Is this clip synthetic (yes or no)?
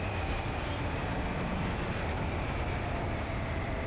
yes